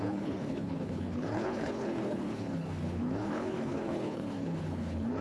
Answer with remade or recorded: remade